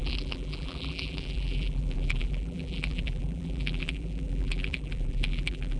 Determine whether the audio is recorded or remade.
remade